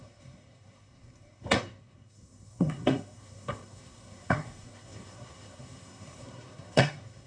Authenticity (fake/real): fake